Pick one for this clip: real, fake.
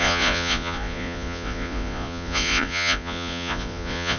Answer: fake